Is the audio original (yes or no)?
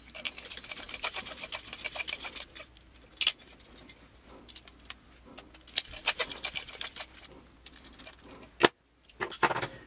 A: yes